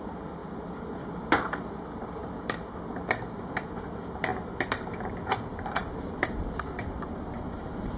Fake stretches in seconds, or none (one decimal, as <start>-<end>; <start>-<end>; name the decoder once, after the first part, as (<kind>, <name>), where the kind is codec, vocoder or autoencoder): 0.0-4.3 (vocoder, BigVGAN v2); 5.3-8.0